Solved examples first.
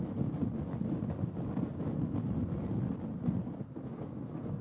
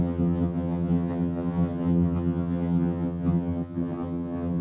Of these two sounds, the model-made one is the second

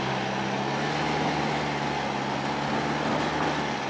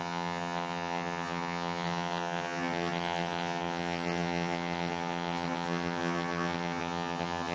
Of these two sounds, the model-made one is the second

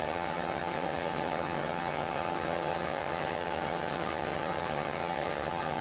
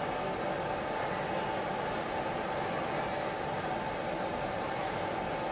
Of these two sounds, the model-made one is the first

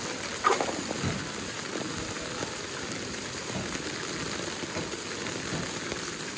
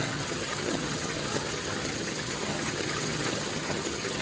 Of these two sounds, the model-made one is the second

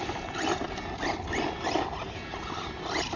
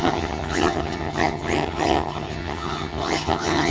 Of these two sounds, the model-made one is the second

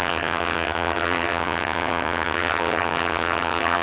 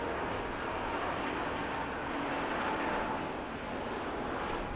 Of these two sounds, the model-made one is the first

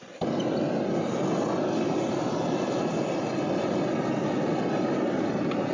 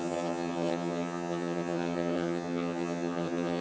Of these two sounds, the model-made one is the second